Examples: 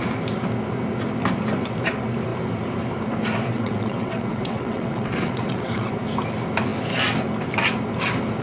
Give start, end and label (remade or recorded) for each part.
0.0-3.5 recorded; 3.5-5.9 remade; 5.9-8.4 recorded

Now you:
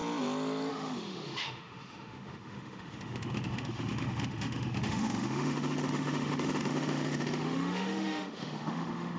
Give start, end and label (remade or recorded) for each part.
0.0-0.7 recorded; 0.7-9.2 remade

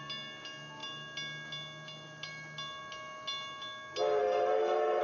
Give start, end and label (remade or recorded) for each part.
0.0-4.2 recorded; 4.2-5.0 remade